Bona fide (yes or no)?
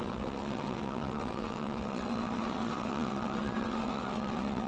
no